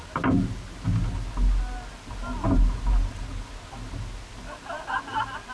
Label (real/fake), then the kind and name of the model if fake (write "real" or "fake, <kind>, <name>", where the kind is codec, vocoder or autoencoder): real